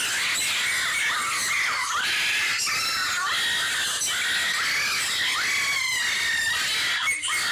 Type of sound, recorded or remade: recorded